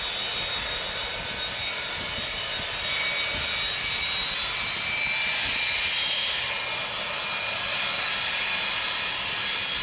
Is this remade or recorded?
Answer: recorded